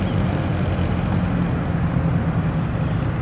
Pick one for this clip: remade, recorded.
recorded